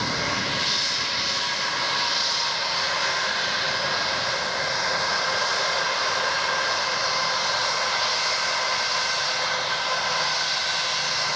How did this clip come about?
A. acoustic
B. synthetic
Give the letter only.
A